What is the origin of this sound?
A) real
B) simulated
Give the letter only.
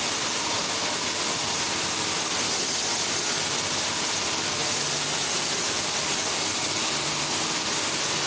A